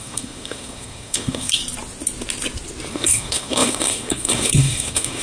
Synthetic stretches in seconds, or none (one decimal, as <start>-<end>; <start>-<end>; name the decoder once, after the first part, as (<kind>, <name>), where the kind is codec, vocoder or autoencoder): 0.0-1.6 (codec, SNAC); 2.9-5.2